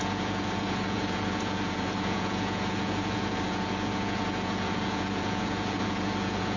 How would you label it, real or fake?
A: fake